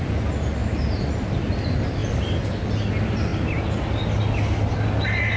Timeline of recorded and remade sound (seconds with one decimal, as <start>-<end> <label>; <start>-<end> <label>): 0.0-5.4 recorded